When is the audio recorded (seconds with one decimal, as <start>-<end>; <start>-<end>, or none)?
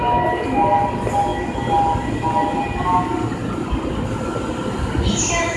0.0-5.6